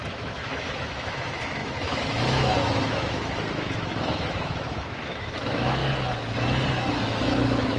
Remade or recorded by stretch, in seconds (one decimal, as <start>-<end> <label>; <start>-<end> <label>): 0.0-5.8 remade; 5.8-6.7 recorded; 6.7-7.8 remade